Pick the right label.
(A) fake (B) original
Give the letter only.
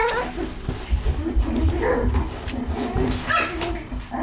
B